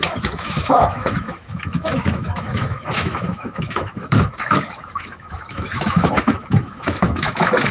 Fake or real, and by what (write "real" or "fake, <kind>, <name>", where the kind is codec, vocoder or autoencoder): fake, autoencoder, DAC-VAE